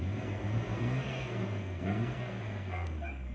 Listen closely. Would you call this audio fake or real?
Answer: fake